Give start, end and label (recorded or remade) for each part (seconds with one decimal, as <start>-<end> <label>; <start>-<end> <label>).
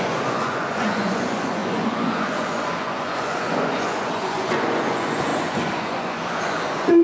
0.0-7.0 remade